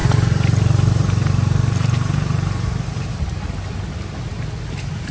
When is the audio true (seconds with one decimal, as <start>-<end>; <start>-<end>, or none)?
3.1-5.1

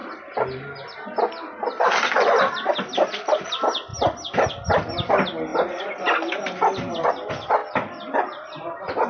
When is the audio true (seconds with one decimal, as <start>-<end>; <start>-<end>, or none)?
0.0-5.5; 6.3-7.6; 8.1-9.1

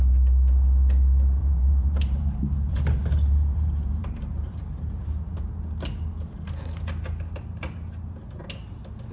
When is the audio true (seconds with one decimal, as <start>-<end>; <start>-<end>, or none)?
0.0-1.4; 5.4-9.1

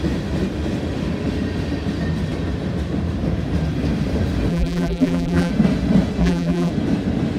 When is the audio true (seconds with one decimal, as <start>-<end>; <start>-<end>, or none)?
0.0-4.5; 5.5-6.2; 6.7-7.4

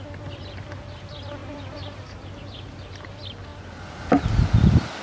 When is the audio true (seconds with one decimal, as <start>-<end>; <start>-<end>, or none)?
0.0-1.4; 2.6-5.0

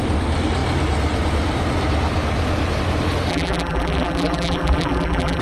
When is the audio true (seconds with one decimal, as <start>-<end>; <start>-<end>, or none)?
0.0-3.3

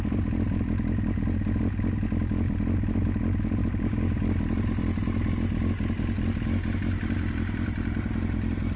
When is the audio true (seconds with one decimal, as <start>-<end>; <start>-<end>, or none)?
none

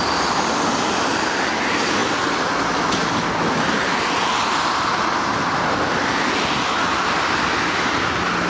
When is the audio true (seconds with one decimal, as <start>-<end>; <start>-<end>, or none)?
0.0-8.5